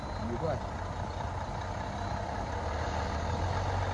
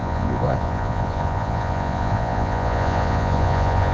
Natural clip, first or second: first